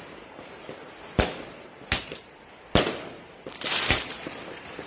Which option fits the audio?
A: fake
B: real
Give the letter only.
A